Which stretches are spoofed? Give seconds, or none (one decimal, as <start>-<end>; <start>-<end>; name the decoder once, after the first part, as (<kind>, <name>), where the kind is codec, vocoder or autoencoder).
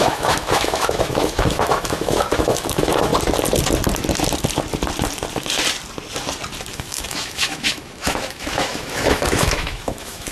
0.0-3.1 (autoencoder, DAC-VAE); 6.7-10.3